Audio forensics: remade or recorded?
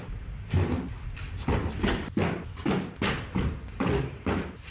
remade